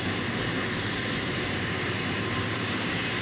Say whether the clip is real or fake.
fake